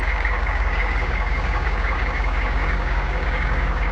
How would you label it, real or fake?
fake